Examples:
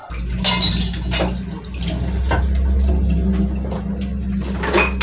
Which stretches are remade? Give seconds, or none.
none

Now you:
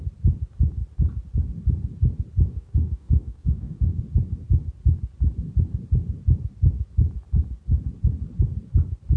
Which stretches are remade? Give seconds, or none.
2.5-4.0 (codec, DAC)

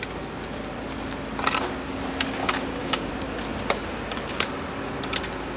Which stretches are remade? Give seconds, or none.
2.4-3.1 (codec, DAC)

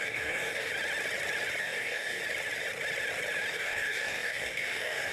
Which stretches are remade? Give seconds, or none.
0.0-0.7 (codec, DAC); 1.6-2.2; 3.5-5.1

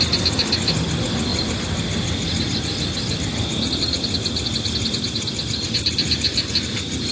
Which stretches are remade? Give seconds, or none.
none